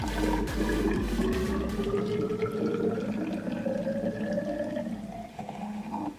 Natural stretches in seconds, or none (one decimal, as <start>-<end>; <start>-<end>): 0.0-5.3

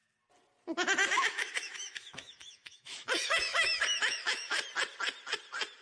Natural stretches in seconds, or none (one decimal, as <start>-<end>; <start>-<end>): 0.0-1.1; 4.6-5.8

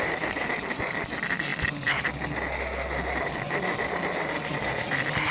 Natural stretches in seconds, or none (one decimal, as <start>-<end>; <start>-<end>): 0.0-5.3

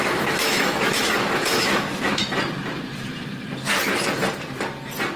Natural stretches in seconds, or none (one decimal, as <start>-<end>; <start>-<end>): 2.2-5.2

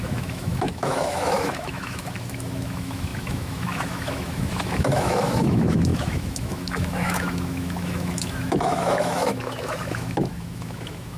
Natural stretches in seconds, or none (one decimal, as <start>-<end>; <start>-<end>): none